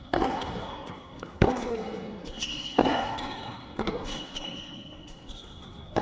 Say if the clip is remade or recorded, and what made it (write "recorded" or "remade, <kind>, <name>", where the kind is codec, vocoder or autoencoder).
remade, codec, SNAC